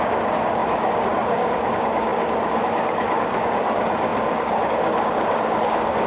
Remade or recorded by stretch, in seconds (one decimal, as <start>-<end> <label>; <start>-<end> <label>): 0.0-6.1 remade